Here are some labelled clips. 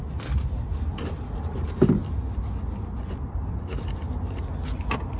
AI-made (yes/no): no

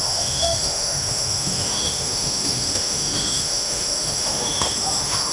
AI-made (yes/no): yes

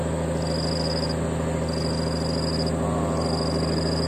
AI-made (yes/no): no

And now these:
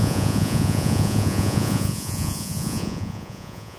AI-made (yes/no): yes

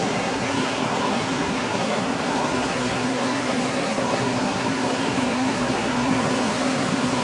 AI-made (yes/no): yes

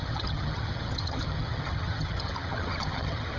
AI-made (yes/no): yes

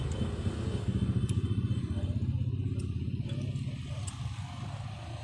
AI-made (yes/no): no